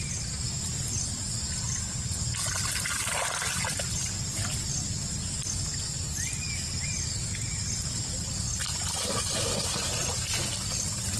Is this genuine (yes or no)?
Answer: yes